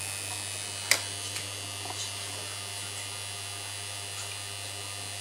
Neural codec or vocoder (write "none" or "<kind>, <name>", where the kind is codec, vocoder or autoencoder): none